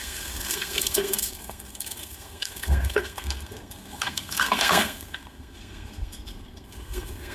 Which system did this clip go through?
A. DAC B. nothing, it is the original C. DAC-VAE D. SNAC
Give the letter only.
D